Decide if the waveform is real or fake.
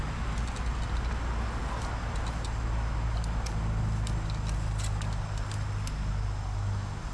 real